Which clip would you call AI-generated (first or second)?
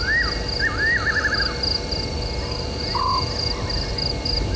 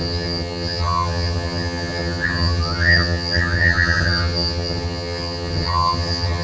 second